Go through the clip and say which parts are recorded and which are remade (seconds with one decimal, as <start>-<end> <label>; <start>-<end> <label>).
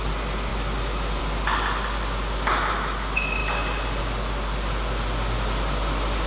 0.0-6.3 recorded